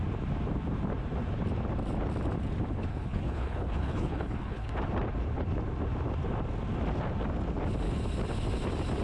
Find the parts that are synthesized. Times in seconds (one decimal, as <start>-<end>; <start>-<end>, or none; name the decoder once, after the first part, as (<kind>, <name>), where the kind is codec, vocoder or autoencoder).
2.9-4.7 (codec, HILCodec)